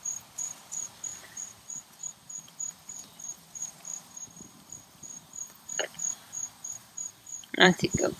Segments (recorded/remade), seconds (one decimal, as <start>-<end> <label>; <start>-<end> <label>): 0.0-8.2 remade